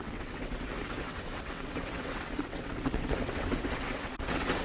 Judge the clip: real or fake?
fake